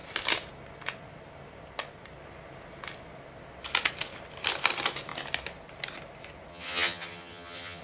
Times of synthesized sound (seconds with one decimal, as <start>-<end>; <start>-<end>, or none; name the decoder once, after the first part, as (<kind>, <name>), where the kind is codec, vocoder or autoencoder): 6.5-7.8 (vocoder, HiFi-GAN)